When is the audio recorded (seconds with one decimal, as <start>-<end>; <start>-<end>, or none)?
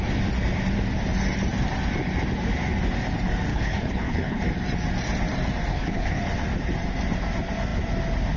0.0-3.5; 4.4-5.7; 6.2-8.4